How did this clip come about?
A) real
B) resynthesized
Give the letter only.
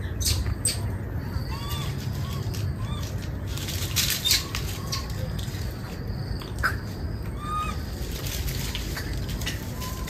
A